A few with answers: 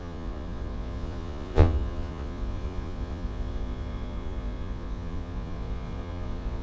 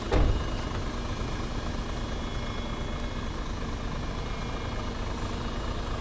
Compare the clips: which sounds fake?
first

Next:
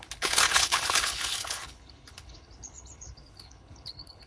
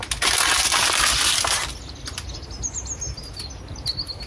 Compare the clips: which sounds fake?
first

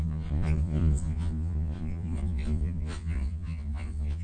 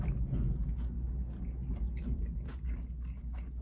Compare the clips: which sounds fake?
first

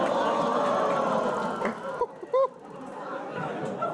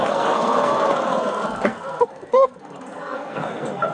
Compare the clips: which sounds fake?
second